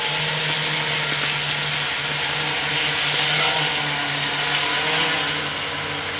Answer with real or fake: real